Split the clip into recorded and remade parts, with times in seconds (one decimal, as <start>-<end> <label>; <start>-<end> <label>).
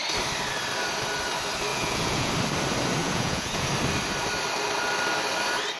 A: 0.0-1.7 recorded; 1.7-2.3 remade; 2.3-3.0 recorded; 3.0-3.7 remade; 3.7-5.8 recorded